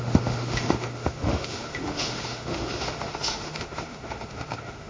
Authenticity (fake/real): fake